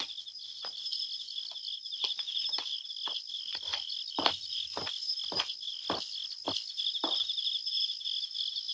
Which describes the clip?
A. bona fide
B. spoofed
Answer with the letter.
A